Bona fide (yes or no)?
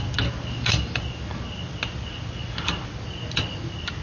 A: yes